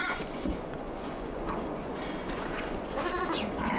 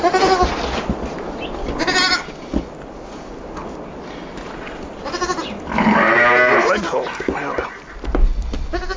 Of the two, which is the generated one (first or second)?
first